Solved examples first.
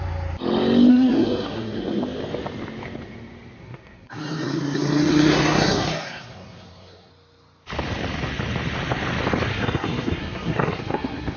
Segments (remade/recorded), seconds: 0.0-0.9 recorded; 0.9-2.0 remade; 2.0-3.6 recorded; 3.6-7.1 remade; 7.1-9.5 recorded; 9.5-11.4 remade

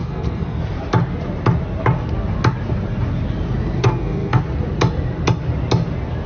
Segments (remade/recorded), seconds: 0.0-0.6 remade; 0.6-3.8 recorded; 3.8-4.4 remade; 4.4-6.3 recorded

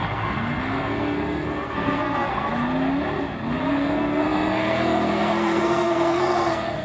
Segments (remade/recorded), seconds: 0.0-2.5 remade; 2.5-3.7 recorded; 3.7-6.8 remade

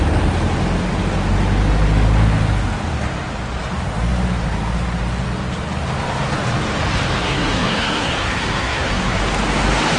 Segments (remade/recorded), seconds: 0.0-7.2 recorded; 7.2-9.2 remade; 9.2-10.0 recorded

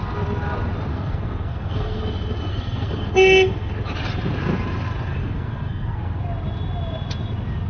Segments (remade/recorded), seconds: 0.0-0.9 recorded; 0.9-2.0 remade; 2.0-2.5 recorded; 2.5-3.7 remade; 3.7-5.1 recorded; 5.1-6.2 remade; 6.2-7.7 recorded